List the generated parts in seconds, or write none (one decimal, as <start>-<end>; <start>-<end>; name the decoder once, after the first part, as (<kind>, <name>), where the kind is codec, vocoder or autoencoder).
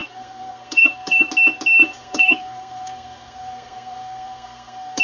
0.0-1.3 (codec, SNAC); 1.8-5.0